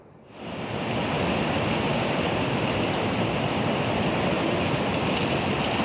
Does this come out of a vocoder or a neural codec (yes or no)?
no